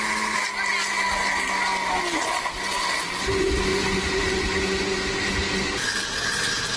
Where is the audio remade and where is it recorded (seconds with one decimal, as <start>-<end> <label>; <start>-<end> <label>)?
0.0-6.8 recorded